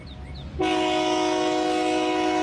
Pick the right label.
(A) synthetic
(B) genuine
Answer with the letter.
B